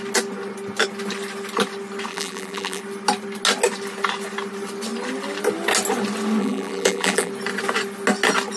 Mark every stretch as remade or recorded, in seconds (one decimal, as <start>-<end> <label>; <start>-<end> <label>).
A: 0.0-2.1 recorded; 2.1-2.8 remade; 2.8-6.4 recorded; 6.4-7.3 remade; 7.3-8.6 recorded

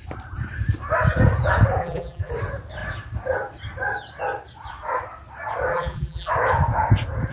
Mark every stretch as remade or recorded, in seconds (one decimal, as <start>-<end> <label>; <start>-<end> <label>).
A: 0.0-1.8 recorded; 1.8-2.3 remade; 2.3-5.7 recorded; 5.7-6.3 remade; 6.3-7.3 recorded

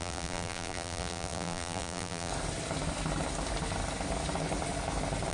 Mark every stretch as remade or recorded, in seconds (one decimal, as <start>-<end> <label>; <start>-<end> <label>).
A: 0.0-2.3 remade; 2.3-5.3 recorded

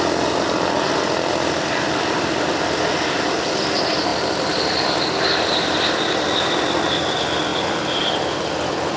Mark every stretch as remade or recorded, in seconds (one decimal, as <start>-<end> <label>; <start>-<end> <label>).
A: 0.0-4.1 recorded; 4.1-6.7 remade; 6.7-7.5 recorded; 7.5-9.0 remade